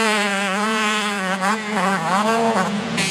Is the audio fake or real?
fake